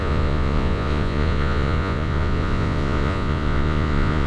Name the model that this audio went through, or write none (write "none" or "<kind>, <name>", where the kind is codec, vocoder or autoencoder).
vocoder, Vocos